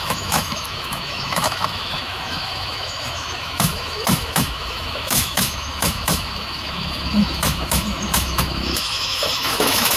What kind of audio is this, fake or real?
fake